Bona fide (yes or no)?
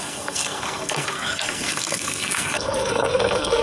no